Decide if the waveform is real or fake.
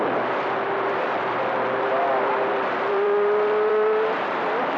fake